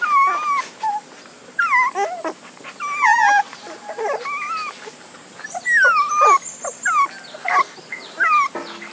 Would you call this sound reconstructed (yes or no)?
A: no